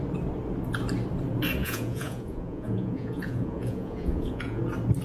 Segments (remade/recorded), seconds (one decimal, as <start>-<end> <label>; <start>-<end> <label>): 0.0-1.6 recorded; 1.6-4.6 remade; 4.6-5.0 recorded